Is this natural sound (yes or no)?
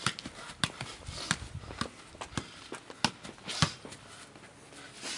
yes